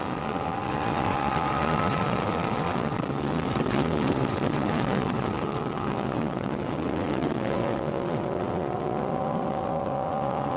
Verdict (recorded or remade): remade